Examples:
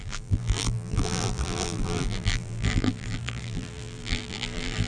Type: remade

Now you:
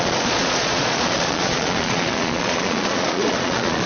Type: remade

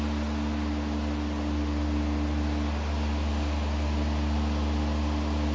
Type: recorded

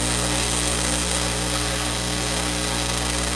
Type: remade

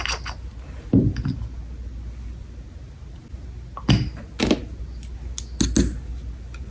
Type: recorded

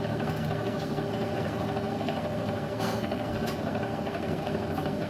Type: remade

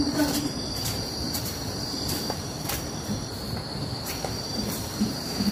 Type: remade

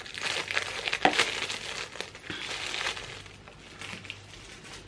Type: recorded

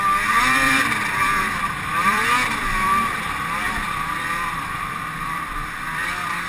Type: remade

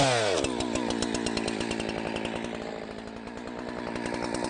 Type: recorded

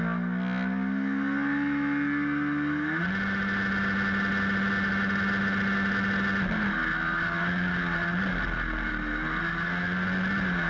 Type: recorded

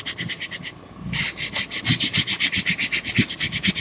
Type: recorded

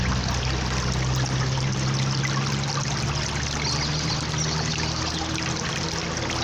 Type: recorded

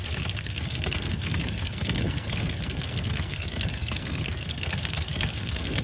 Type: remade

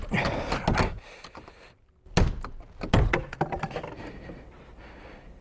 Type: recorded